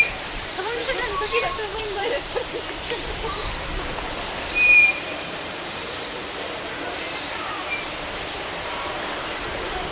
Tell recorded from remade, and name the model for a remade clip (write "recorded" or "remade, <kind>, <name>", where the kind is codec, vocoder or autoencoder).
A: remade, vocoder, BigVGAN v2